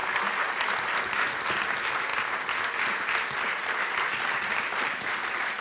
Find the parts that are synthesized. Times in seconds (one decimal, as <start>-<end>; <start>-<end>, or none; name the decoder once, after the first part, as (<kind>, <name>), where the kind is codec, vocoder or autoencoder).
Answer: none

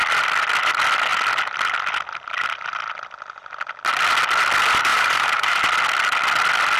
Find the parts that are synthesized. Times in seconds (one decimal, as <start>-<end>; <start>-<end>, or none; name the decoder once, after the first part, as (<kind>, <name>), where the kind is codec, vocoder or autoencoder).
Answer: 4.9-5.6 (vocoder, BigVGAN v2)

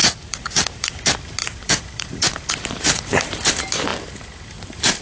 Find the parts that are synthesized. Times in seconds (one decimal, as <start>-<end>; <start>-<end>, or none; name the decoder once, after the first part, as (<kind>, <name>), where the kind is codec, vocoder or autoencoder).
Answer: 0.0-0.9 (vocoder, BigVGAN v2); 1.4-3.4

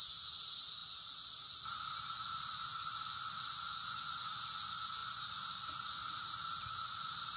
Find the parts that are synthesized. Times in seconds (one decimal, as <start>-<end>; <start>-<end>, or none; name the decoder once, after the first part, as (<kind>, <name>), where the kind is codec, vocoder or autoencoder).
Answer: none

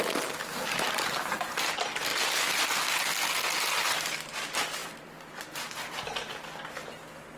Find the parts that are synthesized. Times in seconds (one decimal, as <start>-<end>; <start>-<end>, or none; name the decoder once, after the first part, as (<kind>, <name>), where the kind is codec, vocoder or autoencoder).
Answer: 4.8-6.0 (vocoder, BigVGAN v2)

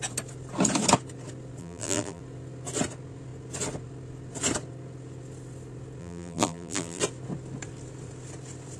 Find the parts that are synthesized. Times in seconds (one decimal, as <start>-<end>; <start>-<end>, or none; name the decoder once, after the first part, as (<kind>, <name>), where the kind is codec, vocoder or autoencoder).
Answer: 1.6-2.2 (vocoder, BigVGAN v2); 6.0-7.0

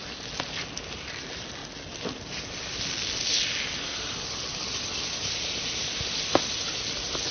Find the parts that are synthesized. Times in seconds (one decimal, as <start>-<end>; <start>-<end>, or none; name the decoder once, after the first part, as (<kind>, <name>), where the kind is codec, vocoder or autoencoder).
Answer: 3.9-6.0 (vocoder, BigVGAN v2)

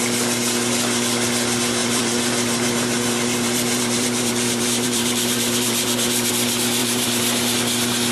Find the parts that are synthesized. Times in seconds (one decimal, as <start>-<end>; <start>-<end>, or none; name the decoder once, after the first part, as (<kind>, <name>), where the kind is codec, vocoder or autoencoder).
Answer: 1.8-6.3 (vocoder, BigVGAN v2); 6.8-7.5